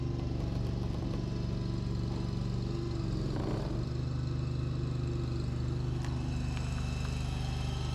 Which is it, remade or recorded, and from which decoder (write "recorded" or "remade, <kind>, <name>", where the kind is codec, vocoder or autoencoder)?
recorded